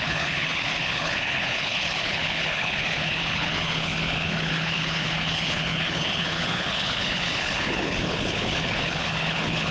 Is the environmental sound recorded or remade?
remade